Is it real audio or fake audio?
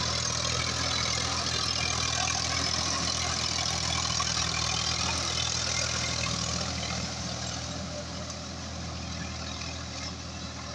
real